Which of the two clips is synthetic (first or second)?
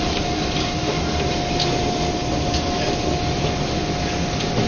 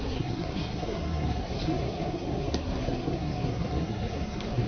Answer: second